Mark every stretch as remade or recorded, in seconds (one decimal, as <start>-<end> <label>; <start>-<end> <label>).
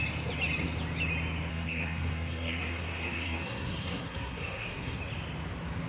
0.0-1.5 recorded; 1.5-5.0 remade; 5.0-5.9 recorded